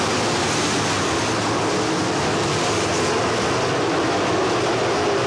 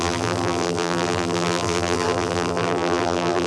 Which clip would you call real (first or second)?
first